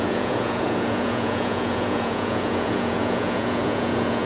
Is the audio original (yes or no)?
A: no